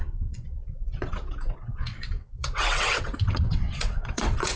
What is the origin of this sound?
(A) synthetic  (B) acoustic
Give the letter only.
A